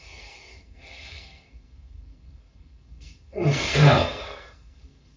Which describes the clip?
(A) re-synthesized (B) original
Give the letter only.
A